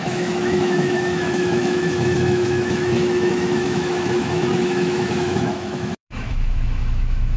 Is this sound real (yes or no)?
no